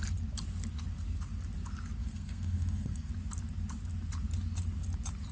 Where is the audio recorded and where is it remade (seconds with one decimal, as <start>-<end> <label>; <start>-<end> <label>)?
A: 0.0-2.0 recorded; 2.0-3.1 remade; 3.1-5.3 recorded